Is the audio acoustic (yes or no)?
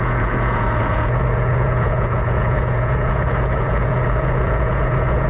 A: no